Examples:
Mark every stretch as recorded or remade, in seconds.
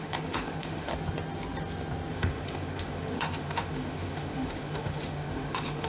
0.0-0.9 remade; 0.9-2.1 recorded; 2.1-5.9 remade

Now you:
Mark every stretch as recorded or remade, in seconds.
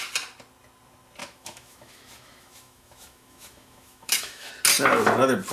0.0-1.2 recorded; 1.2-4.5 remade; 4.5-5.5 recorded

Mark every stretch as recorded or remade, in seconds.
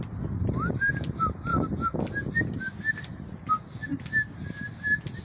0.0-5.2 recorded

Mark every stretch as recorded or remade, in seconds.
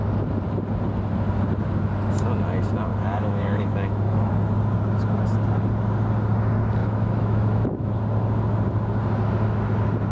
0.0-2.9 recorded; 2.9-4.3 remade; 4.3-6.8 recorded; 6.8-7.9 remade; 7.9-10.1 recorded